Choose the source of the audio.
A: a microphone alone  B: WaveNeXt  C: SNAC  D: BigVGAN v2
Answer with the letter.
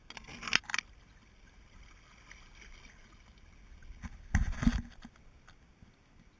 A